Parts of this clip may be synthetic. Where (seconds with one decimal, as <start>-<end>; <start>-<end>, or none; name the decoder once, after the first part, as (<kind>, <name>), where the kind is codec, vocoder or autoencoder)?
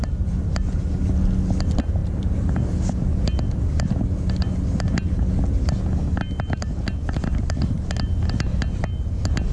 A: none